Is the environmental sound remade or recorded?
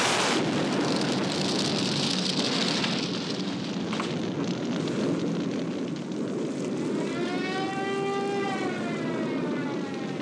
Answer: recorded